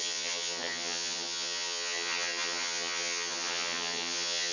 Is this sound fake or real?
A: fake